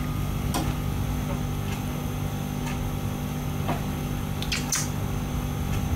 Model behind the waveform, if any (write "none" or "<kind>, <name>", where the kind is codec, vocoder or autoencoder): none